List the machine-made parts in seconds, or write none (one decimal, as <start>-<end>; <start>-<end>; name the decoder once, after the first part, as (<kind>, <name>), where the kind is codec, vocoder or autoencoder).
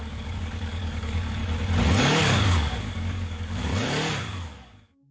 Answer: 0.0-1.4 (codec, DAC); 2.0-3.7; 4.2-5.1